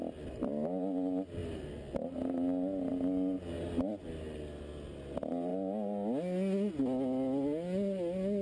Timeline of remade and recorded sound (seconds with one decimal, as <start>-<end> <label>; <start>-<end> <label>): 0.0-8.4 recorded